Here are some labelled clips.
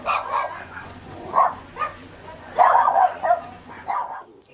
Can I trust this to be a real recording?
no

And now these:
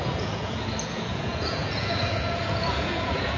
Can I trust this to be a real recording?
no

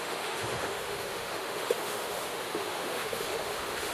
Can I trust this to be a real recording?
no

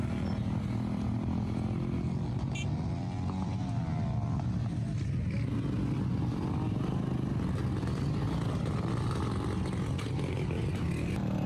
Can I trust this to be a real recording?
yes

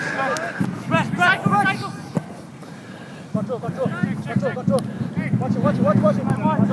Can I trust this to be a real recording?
yes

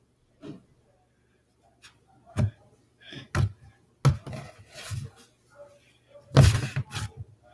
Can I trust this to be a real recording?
yes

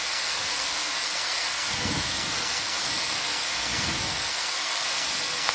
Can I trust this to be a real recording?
no